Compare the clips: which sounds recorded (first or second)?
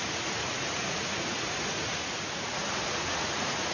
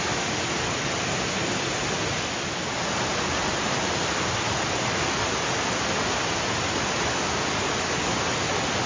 second